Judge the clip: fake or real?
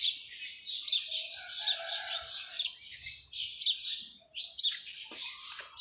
real